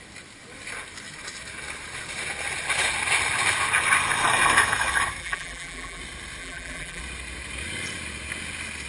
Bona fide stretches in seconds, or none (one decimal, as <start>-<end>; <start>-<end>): 0.0-5.2; 6.0-6.4; 7.0-8.9